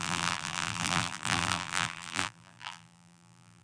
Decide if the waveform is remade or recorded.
remade